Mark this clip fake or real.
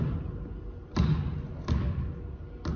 real